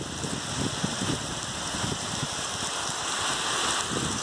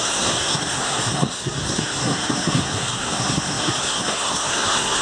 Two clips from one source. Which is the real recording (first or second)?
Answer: first